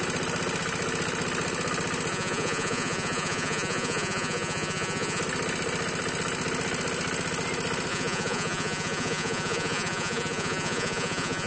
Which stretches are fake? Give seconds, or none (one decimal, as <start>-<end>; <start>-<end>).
2.1-5.2; 7.9-11.5